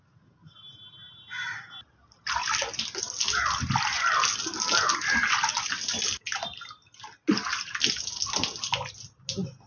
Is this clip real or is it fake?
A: real